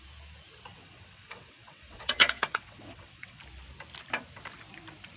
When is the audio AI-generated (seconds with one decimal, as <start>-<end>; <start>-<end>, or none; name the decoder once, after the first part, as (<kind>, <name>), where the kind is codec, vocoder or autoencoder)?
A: 0.7-3.4 (vocoder, WaveNeXt)

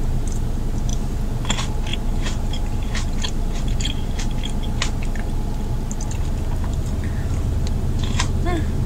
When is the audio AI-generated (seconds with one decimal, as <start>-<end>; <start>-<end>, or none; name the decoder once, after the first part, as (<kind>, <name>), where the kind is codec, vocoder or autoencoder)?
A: 1.9-4.2 (vocoder, BigVGAN v2)

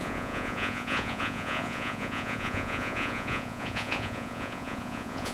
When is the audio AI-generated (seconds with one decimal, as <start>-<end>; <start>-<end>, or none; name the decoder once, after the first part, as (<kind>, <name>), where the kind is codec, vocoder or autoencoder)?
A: 0.0-5.3 (vocoder, Vocos)

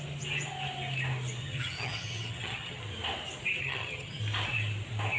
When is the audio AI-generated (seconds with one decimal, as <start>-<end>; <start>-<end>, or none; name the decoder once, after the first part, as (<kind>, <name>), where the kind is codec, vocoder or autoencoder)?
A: 1.4-2.8 (vocoder, HiFi-GAN); 3.6-4.2

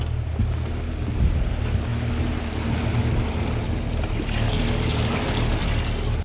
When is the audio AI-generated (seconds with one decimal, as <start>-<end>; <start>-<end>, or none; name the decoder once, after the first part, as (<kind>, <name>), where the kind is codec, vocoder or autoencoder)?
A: none

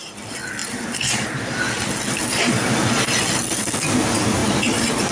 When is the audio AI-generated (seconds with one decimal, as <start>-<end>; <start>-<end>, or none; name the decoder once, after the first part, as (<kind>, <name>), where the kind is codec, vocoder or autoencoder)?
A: none